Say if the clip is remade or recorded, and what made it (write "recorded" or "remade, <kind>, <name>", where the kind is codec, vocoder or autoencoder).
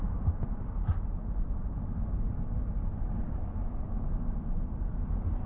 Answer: recorded